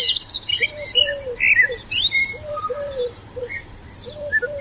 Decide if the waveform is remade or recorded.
remade